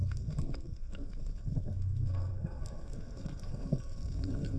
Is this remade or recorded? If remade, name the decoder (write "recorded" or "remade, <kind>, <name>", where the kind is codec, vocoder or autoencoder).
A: remade, codec, SNAC